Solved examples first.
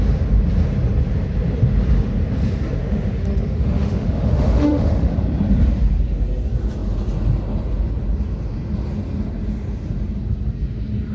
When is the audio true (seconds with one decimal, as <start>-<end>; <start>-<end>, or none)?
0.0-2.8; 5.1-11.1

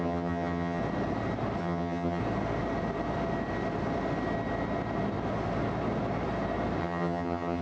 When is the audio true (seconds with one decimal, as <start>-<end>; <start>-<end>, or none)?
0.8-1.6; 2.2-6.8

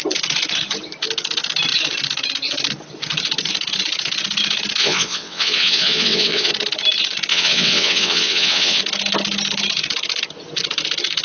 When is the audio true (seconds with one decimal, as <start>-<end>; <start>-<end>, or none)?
0.0-4.8; 6.5-7.3; 8.8-11.2